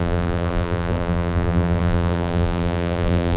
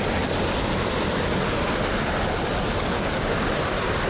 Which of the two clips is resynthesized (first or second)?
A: first